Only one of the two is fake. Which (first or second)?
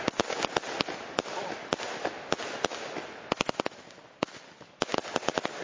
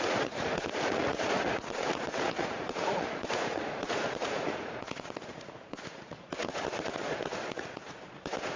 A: second